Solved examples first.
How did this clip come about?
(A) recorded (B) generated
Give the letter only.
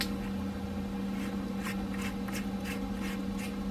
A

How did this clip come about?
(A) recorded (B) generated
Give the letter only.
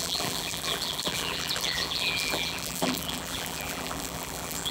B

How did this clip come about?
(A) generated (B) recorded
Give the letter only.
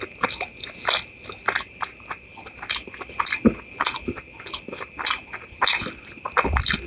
A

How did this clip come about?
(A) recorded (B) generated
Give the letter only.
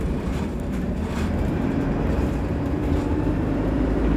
B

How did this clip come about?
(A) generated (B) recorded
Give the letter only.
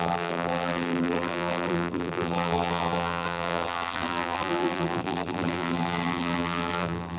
A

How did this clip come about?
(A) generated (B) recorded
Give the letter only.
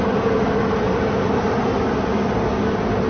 B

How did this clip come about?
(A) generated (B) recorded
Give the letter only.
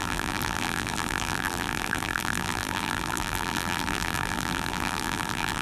A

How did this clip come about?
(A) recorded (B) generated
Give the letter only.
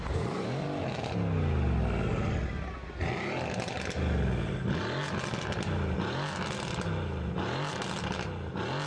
A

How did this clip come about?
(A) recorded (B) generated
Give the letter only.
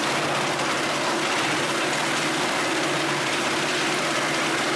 A